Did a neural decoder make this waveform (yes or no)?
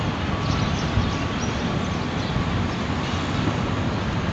no